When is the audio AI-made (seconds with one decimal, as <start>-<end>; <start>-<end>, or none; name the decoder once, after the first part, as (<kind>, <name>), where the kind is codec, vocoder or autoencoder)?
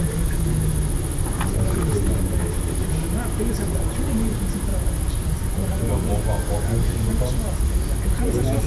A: 4.7-5.9 (vocoder, BigVGAN v2)